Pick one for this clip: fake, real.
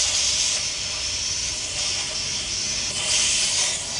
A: real